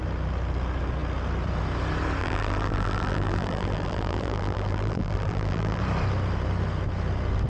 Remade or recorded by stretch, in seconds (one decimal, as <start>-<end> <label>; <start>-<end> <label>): 0.0-2.2 recorded; 2.2-5.8 remade; 5.8-7.5 recorded